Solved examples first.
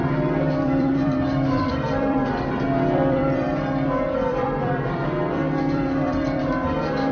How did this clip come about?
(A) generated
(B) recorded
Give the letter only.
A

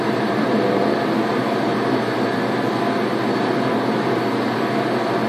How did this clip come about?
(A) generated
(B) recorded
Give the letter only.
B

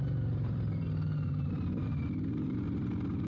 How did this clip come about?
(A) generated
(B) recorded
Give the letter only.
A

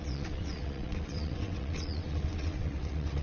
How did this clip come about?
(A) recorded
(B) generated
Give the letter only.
B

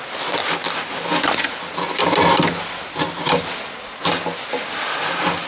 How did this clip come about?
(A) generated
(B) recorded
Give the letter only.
B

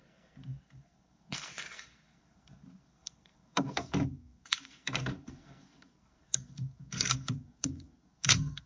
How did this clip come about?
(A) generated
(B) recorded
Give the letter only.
A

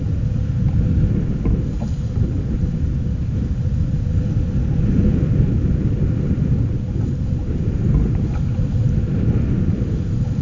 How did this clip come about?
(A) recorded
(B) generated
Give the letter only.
A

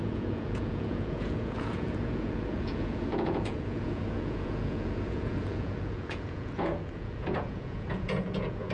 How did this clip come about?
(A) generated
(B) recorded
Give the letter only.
A